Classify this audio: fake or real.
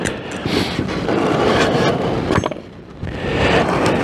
fake